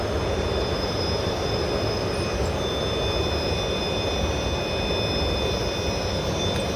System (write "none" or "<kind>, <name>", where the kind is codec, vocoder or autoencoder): none